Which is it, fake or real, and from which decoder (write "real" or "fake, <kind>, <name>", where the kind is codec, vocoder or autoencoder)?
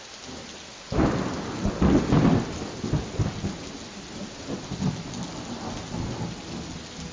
real